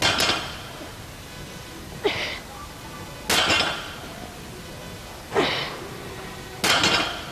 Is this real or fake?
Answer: real